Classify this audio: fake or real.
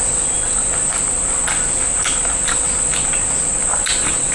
real